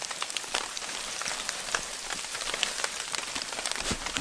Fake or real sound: fake